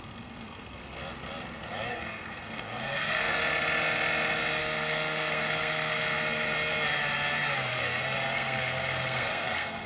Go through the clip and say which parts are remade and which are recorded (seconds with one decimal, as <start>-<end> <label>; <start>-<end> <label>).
0.0-0.8 remade; 0.8-1.9 recorded; 1.9-3.4 remade; 3.4-4.6 recorded; 4.6-6.1 remade; 6.1-7.7 recorded; 7.7-9.9 remade